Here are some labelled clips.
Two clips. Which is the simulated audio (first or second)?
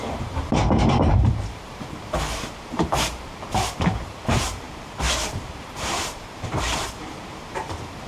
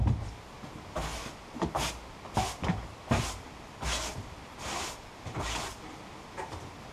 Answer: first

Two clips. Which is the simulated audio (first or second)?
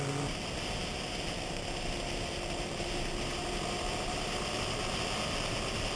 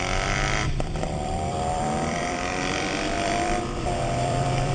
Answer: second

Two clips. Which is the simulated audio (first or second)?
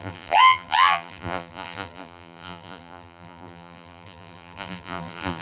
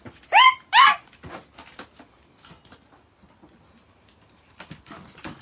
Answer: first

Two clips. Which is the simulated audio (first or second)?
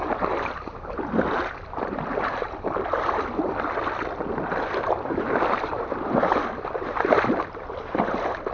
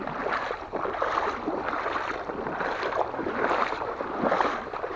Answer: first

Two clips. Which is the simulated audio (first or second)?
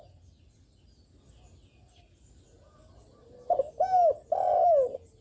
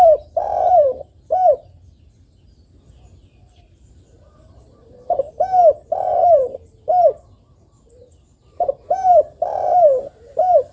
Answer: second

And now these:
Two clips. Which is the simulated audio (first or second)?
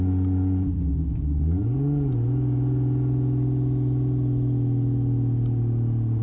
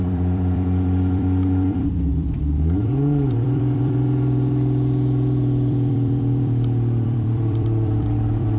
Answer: second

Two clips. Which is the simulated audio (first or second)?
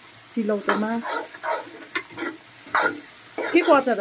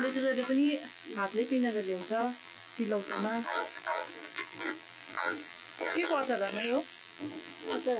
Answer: second